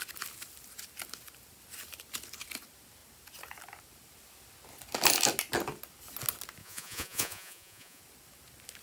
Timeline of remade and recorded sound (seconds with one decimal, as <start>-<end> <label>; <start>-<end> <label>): 0.0-6.6 recorded; 6.6-8.0 remade; 8.0-8.8 recorded